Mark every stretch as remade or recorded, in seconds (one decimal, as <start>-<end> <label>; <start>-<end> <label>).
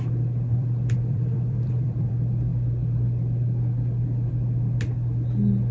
0.0-0.5 recorded; 0.5-2.1 remade; 2.1-5.7 recorded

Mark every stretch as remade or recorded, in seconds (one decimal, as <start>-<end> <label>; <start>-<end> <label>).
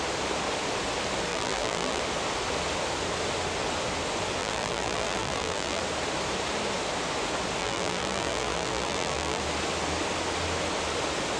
0.0-1.3 recorded; 1.3-2.0 remade; 2.0-4.4 recorded; 4.4-5.8 remade; 5.8-7.6 recorded; 7.6-9.4 remade; 9.4-11.4 recorded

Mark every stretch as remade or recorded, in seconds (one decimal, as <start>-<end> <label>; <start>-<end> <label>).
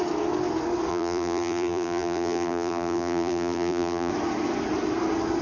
0.0-0.9 recorded; 0.9-4.1 remade; 4.1-5.4 recorded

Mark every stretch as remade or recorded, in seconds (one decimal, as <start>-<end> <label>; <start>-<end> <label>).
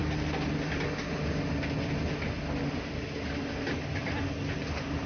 0.0-5.1 recorded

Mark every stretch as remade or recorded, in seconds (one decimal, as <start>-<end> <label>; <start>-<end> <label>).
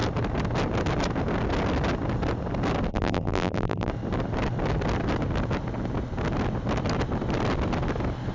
0.0-2.9 recorded; 2.9-3.9 remade; 3.9-8.3 recorded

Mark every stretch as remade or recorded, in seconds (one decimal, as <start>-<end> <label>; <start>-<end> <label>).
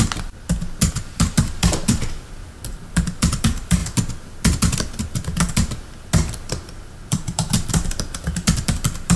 0.0-3.8 remade; 3.8-6.7 recorded; 6.7-9.2 remade